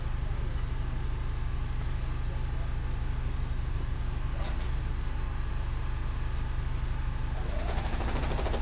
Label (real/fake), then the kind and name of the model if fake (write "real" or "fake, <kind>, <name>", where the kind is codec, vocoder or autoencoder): real